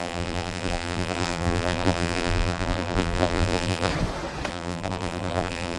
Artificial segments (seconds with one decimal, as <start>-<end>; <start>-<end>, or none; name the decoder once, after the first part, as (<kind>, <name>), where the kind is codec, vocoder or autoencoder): 0.0-3.9 (vocoder, BigVGAN v2); 4.5-5.8